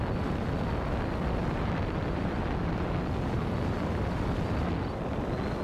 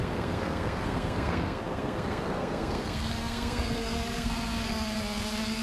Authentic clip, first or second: first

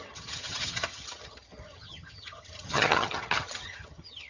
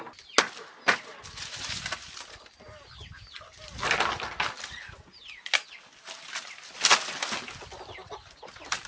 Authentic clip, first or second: second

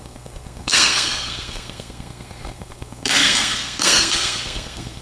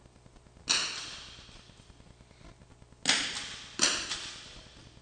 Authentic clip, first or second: second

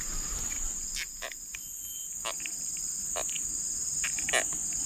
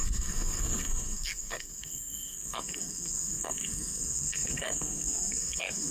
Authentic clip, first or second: first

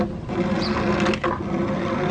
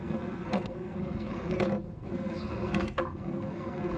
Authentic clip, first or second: first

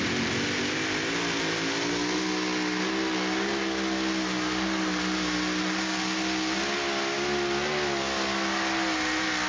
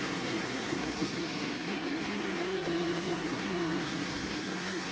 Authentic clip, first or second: first